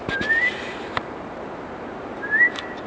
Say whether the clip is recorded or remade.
remade